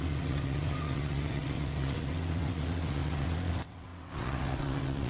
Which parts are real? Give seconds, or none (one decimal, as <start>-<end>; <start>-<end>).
none